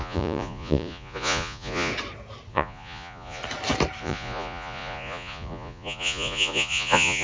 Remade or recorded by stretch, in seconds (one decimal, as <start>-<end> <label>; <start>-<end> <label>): 0.0-1.9 remade; 1.9-2.5 recorded; 2.5-3.4 remade; 3.4-4.0 recorded; 4.0-7.2 remade